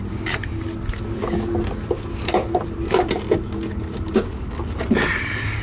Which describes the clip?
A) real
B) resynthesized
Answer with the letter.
A